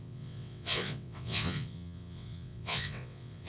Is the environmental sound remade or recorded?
remade